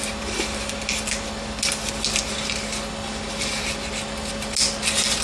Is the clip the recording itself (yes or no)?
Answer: yes